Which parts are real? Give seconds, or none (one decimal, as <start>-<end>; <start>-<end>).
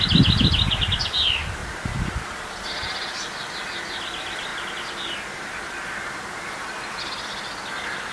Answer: 0.0-8.1